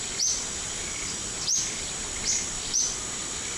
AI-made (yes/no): no